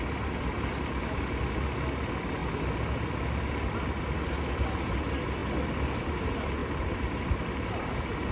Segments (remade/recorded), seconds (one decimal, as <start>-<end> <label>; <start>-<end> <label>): 0.0-6.6 recorded; 6.6-7.9 remade; 7.9-8.3 recorded